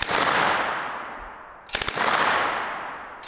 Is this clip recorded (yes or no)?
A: yes